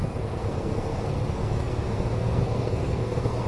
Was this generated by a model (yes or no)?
yes